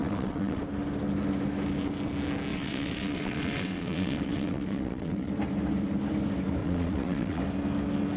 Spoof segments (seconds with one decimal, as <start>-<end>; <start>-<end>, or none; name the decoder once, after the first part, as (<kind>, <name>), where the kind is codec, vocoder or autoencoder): 0.0-0.6 (vocoder, WaveNeXt); 2.5-5.3; 6.6-7.4